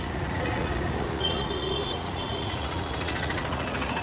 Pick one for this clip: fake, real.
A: fake